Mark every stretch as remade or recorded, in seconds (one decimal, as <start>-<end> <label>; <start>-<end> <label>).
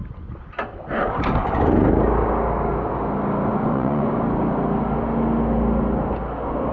0.0-3.5 recorded; 3.5-4.1 remade; 4.1-6.7 recorded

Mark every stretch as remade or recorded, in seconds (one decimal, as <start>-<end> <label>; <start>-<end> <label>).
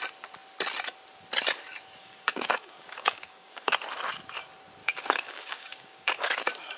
0.0-2.0 recorded; 2.0-3.7 remade; 3.7-4.8 recorded; 4.8-6.3 remade; 6.3-6.8 recorded